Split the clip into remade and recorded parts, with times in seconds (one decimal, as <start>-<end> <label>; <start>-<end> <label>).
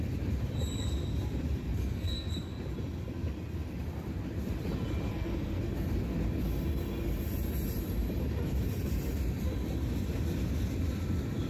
0.0-1.7 recorded; 1.7-2.3 remade; 2.3-5.1 recorded; 5.1-5.6 remade; 5.6-11.5 recorded